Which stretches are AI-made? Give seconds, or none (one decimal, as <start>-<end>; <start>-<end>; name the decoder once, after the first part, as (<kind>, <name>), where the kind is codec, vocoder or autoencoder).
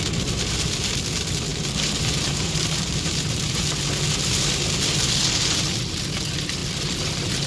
1.5-3.6 (vocoder, BigVGAN v2)